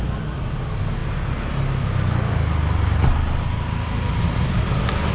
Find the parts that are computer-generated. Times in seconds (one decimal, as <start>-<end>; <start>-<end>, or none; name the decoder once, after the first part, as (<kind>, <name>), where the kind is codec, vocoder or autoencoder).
none